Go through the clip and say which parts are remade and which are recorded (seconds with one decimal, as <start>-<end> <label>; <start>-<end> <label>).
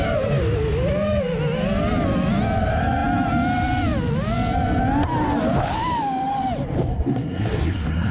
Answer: 0.0-6.9 recorded; 6.9-8.1 remade